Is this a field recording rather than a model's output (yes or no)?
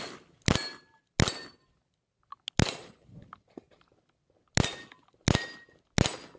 yes